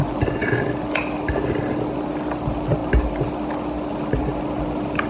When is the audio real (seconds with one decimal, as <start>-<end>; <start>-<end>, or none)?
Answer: 0.0-5.1